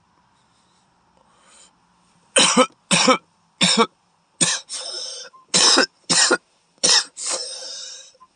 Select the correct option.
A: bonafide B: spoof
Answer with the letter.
A